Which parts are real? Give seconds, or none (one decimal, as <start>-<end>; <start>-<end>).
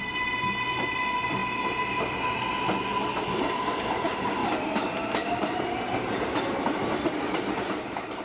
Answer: 1.4-3.3; 4.4-5.3